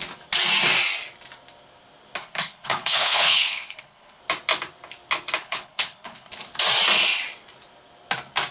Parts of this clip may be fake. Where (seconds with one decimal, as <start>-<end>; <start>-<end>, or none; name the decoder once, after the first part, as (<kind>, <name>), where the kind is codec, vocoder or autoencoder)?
2.2-4.2 (codec, HILCodec); 5.4-6.3

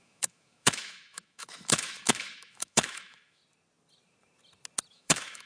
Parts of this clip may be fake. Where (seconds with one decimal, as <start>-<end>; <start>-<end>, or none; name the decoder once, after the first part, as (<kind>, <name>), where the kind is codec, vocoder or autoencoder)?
0.0-3.4 (autoencoder, DAC-VAE); 4.9-5.5